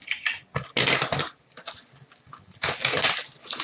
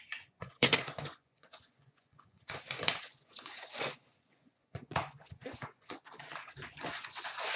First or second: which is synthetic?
second